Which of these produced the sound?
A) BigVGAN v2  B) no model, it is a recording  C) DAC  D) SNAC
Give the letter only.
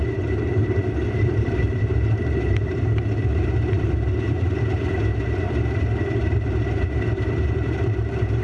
A